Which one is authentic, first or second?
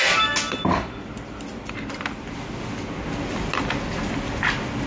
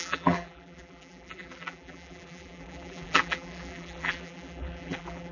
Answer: first